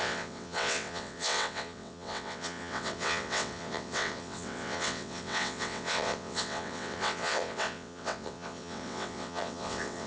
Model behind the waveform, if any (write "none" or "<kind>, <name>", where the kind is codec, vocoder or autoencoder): vocoder, WaveNeXt